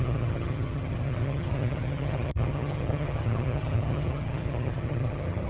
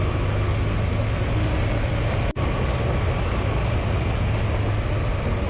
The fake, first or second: first